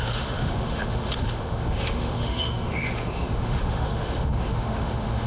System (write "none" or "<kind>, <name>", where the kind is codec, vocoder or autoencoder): autoencoder, DAC-VAE